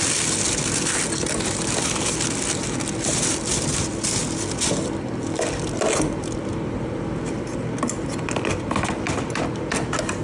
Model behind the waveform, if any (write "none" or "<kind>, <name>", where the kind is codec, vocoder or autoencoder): none